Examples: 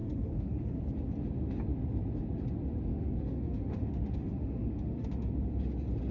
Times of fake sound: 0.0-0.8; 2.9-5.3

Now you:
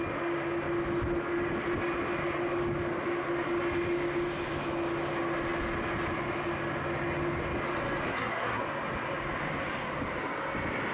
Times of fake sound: 8.1-8.6

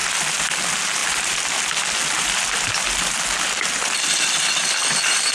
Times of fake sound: none

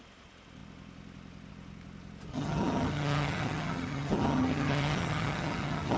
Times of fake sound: 2.3-6.0

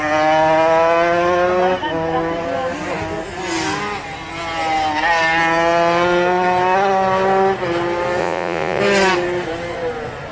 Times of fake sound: 8.2-8.8

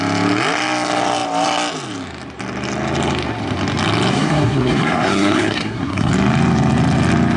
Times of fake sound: 4.1-6.1